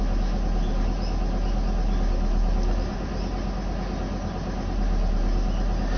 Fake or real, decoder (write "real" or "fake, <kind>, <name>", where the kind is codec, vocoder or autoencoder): real